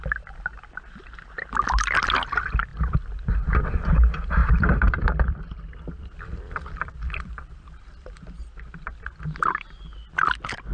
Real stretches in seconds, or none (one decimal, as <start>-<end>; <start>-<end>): 0.0-2.7; 3.7-4.4; 8.4-10.7